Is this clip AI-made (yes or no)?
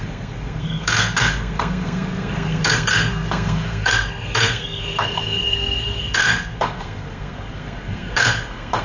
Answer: yes